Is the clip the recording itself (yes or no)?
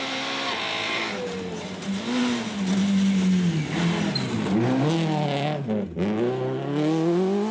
yes